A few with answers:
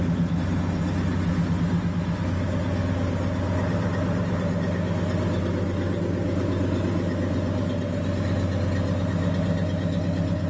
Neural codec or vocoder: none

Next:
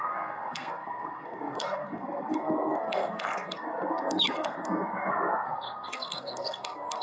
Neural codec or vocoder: codec, SNAC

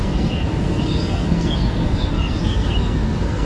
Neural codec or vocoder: codec, SNAC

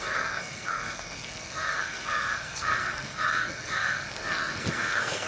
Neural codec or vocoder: codec, SNAC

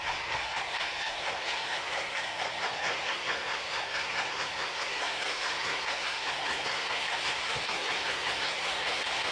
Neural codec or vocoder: codec, SNAC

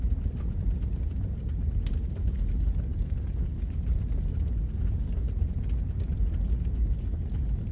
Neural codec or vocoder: none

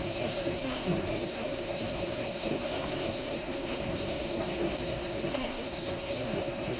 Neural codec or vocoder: codec, SNAC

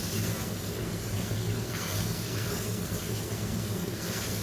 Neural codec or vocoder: codec, SNAC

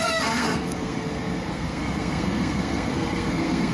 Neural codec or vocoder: codec, SNAC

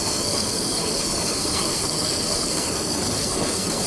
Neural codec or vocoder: codec, SNAC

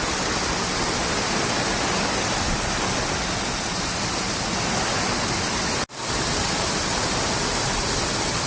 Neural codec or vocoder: none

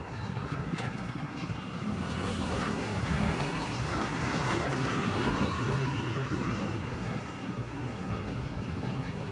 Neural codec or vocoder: codec, SNAC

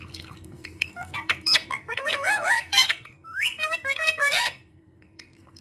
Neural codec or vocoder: codec, SNAC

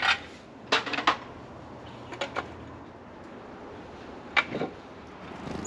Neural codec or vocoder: none